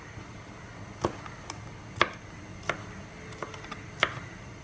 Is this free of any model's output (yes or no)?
yes